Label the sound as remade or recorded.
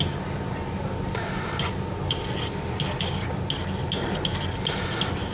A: recorded